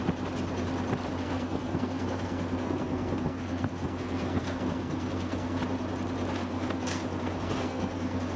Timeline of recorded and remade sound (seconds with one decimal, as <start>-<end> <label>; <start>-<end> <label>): 0.0-1.2 recorded; 1.2-5.6 remade; 5.6-6.4 recorded; 6.4-8.4 remade